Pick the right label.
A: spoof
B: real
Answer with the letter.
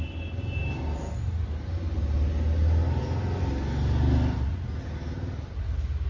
B